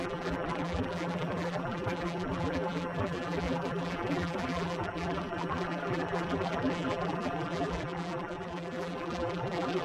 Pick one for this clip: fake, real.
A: fake